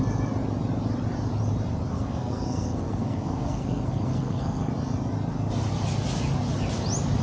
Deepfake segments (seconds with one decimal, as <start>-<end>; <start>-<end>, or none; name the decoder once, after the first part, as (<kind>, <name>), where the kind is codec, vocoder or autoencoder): 1.9-4.7 (codec, SNAC)